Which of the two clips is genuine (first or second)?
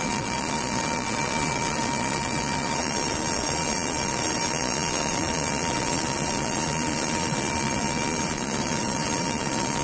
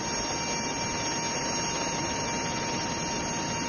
second